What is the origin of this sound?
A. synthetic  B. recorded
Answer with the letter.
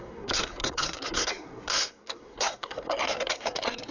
A